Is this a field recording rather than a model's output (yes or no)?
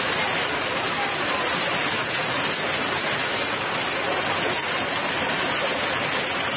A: yes